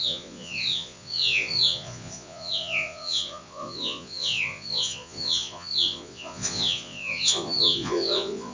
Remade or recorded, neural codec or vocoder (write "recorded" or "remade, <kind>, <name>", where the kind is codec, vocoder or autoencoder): remade, vocoder, Vocos